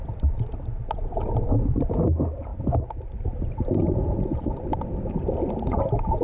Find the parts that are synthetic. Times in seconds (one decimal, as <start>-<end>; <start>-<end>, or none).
2.5-5.4